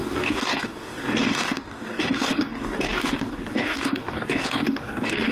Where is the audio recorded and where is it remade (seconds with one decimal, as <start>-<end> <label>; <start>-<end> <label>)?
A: 0.0-5.3 remade